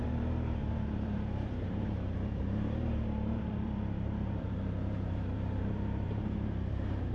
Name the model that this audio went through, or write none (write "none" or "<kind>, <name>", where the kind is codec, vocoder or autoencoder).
vocoder, BigVGAN v2